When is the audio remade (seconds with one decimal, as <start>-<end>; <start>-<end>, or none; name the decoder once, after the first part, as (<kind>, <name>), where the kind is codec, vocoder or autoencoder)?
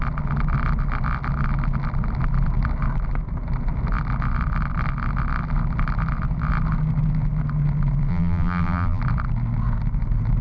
8.1-9.0 (vocoder, BigVGAN v2)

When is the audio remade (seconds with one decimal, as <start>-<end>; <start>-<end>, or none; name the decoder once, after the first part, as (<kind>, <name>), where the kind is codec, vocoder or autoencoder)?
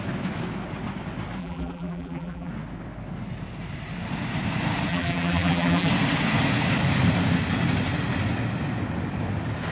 1.4-2.5 (vocoder, BigVGAN v2); 4.9-5.9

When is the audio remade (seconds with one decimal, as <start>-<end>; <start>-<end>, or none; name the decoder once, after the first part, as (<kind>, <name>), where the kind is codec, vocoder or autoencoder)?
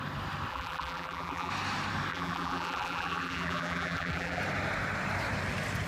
0.5-1.5 (vocoder, BigVGAN v2); 2.1-4.4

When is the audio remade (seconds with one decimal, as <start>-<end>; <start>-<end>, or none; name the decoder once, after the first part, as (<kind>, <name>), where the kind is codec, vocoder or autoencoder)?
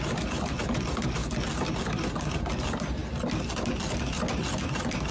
0.0-1.2 (vocoder, BigVGAN v2); 1.7-3.0; 3.8-5.1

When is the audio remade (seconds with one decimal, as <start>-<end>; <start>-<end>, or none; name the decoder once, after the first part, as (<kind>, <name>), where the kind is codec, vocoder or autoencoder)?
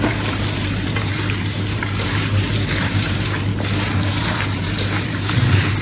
0.0-3.5 (vocoder, BigVGAN v2); 4.2-5.8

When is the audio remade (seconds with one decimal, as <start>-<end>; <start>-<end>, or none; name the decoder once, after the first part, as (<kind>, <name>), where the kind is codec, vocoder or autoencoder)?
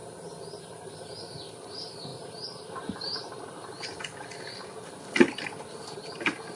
0.6-3.7 (vocoder, BigVGAN v2); 5.7-6.6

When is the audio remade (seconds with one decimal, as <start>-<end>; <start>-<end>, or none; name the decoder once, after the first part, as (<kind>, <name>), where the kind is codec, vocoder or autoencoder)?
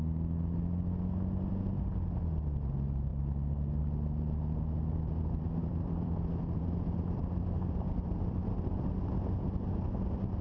3.1-3.8 (vocoder, BigVGAN v2); 5.6-8.9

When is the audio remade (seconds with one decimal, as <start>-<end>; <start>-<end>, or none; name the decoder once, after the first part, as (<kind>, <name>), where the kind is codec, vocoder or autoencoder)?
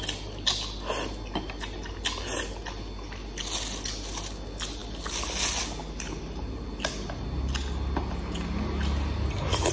none